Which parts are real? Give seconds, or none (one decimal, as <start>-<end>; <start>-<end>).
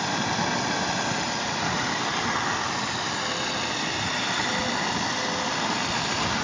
0.0-6.4